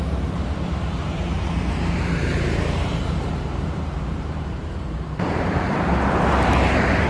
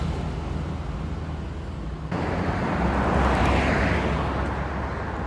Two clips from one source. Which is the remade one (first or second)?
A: first